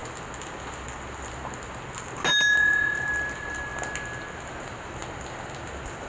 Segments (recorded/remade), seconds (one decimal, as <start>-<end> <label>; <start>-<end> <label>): 0.0-6.1 recorded